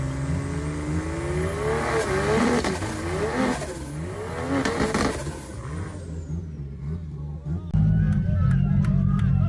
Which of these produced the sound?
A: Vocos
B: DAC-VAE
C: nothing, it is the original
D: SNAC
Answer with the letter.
C